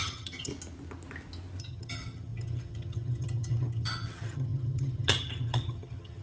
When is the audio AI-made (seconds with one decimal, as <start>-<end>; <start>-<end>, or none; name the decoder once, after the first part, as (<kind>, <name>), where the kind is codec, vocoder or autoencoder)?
0.0-0.5 (vocoder, HiFi-GAN); 1.6-6.2